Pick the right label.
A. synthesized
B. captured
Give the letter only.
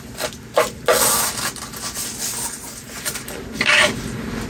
B